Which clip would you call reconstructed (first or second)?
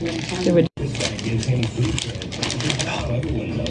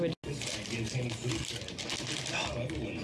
first